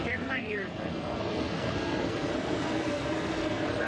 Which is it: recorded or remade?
remade